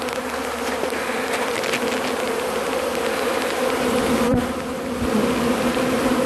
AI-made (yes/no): no